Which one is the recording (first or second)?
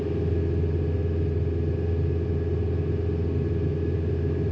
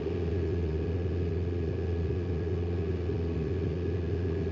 first